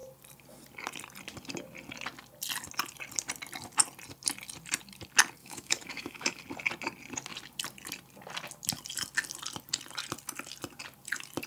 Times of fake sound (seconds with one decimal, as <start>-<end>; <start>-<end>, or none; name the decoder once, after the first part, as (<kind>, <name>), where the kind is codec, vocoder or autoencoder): 5.4-6.4 (autoencoder, DAC-VAE)